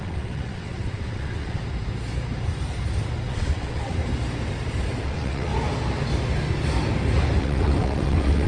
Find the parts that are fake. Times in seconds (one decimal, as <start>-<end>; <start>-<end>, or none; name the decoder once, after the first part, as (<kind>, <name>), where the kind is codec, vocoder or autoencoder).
0.0-1.6 (vocoder, WaveNeXt); 3.3-4.0; 5.0-5.5; 7.4-8.5